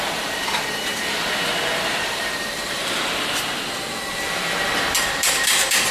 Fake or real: fake